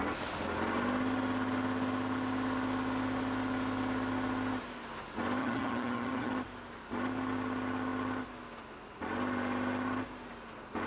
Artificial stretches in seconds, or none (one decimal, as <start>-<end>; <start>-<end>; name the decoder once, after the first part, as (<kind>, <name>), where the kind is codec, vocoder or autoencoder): 5.4-6.3 (vocoder, HiFi-GAN)